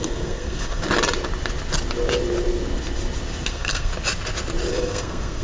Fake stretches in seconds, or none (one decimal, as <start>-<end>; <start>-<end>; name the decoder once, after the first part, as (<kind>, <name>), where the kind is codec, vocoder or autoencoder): 0.0-0.8 (codec, SNAC); 3.5-3.9; 4.7-5.4